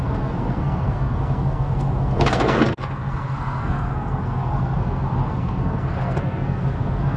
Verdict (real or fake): fake